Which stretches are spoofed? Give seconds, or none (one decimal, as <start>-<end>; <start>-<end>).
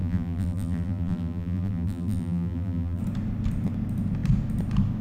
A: 0.0-3.0